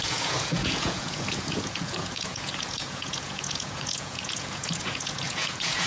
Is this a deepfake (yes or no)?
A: yes